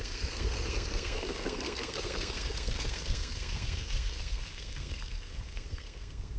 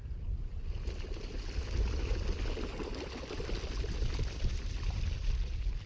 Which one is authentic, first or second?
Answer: second